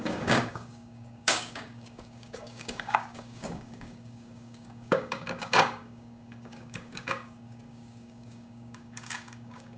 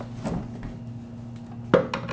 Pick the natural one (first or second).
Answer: second